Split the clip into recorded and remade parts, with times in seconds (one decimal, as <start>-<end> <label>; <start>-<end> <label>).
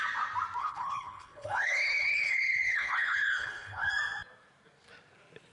0.0-0.6 recorded; 0.6-3.9 remade; 3.9-5.5 recorded